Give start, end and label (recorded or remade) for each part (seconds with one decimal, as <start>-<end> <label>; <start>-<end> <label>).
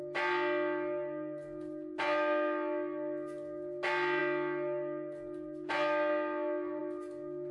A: 0.0-7.5 recorded